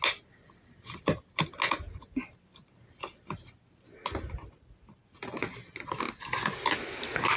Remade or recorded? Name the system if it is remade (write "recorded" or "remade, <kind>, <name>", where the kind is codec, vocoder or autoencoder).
recorded